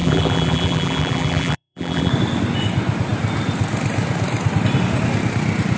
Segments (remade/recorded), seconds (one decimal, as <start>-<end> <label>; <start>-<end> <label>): 0.0-2.1 remade; 2.1-5.8 recorded